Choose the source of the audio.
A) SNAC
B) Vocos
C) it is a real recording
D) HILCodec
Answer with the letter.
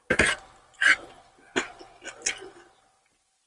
C